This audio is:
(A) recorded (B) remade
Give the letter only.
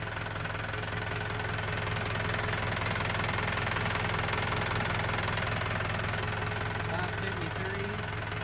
A